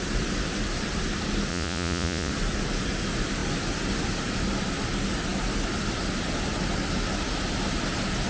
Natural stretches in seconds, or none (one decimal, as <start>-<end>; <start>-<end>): 0.0-1.5; 2.3-8.3